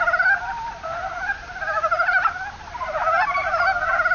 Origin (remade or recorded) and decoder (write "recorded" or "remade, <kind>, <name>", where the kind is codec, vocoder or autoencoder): recorded